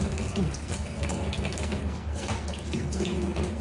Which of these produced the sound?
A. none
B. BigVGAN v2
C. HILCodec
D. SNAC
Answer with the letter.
D